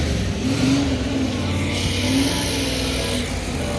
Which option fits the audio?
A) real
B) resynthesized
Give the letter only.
A